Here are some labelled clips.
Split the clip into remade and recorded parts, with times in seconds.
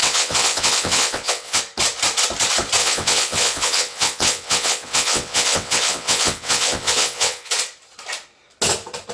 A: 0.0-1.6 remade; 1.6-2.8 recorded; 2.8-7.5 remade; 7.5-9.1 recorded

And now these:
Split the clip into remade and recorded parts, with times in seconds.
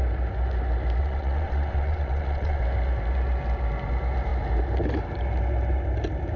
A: 0.0-1.0 recorded; 1.0-2.6 remade; 2.6-6.4 recorded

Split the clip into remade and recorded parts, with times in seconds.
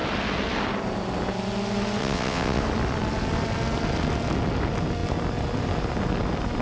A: 0.0-2.0 recorded; 2.0-2.6 remade; 2.6-6.6 recorded